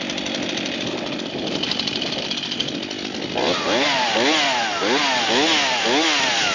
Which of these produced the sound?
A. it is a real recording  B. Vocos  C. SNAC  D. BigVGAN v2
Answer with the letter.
A